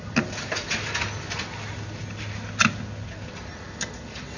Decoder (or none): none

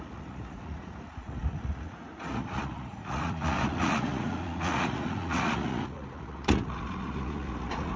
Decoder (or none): vocoder, Vocos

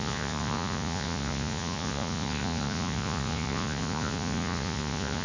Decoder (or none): vocoder, Vocos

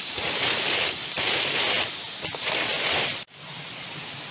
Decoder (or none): none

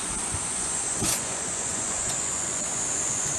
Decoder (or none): vocoder, Vocos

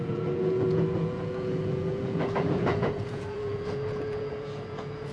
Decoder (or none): vocoder, Vocos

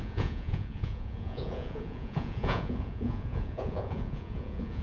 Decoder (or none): vocoder, Vocos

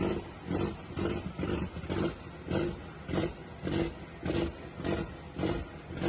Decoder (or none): none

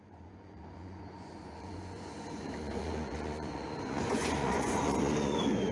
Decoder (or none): vocoder, Vocos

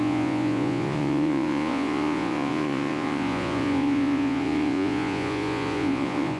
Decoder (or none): vocoder, Vocos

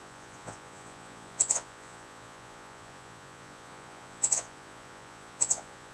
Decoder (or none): vocoder, Vocos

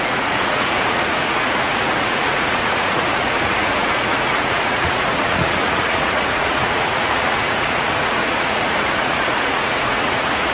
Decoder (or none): vocoder, Vocos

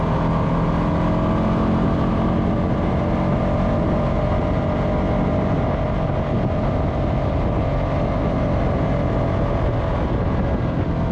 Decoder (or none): none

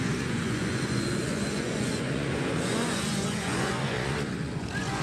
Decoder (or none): vocoder, Vocos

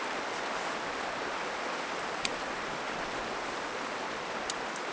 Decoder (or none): none